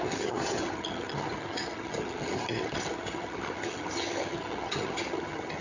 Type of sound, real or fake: fake